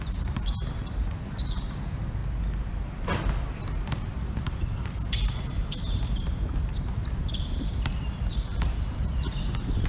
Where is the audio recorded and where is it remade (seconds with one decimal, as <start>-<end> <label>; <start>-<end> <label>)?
0.0-2.2 remade; 2.2-3.7 recorded; 3.7-9.9 remade